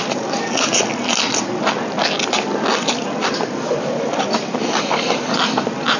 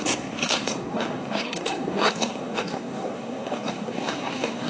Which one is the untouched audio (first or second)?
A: first